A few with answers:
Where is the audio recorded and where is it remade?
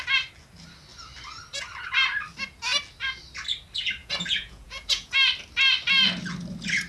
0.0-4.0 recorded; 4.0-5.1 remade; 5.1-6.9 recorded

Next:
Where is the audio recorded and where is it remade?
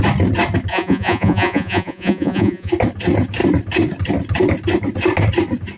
0.0-0.7 recorded; 0.7-2.7 remade; 2.7-5.8 recorded